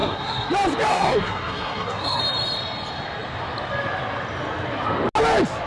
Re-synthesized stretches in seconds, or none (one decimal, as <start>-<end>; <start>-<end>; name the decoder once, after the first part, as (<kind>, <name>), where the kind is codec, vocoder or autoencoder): 0.0-0.5 (codec, SNAC); 0.9-2.2